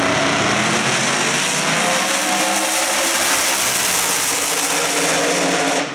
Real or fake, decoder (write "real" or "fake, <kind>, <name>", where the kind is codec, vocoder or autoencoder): real